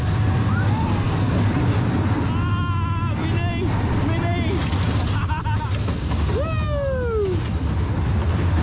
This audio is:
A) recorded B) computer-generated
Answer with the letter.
A